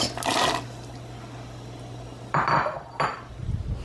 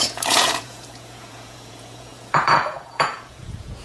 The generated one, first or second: second